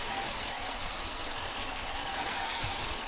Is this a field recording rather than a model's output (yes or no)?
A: no